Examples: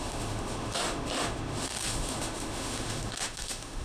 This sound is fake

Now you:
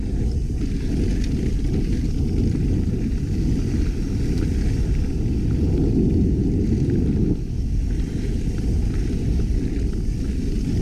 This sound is real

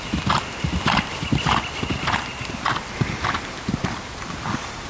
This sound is real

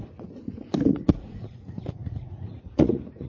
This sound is fake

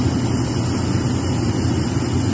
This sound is real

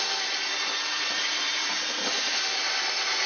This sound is fake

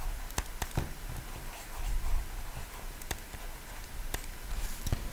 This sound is real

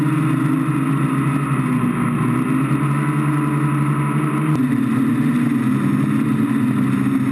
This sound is real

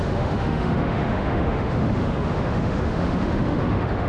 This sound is fake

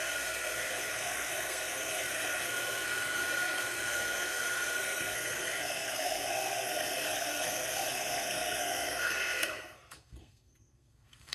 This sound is fake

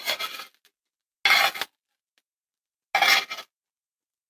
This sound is real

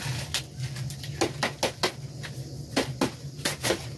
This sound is real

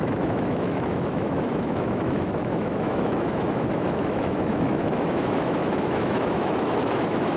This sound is fake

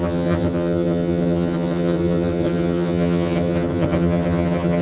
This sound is fake